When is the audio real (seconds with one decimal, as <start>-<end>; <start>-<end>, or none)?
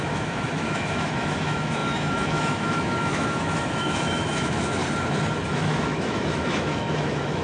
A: 4.8-5.5